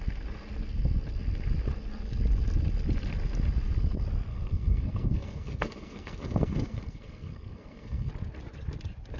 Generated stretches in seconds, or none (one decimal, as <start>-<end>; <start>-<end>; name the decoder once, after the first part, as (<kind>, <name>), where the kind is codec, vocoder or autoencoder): 4.3-8.1 (codec, SNAC)